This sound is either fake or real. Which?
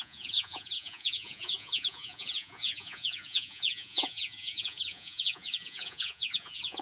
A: fake